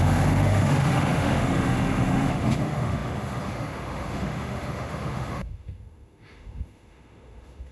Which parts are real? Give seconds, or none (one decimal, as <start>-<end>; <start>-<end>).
none